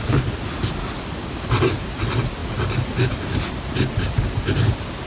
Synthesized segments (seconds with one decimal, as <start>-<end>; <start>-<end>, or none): none

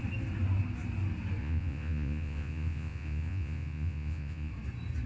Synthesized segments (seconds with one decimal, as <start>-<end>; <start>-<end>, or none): 1.4-4.5

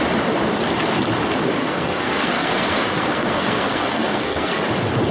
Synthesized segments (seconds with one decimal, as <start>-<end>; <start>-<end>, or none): 1.6-4.6

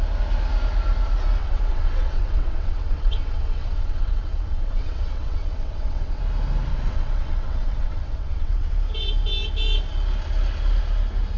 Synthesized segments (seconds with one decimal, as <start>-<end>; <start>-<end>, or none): 1.4-6.2; 6.7-8.7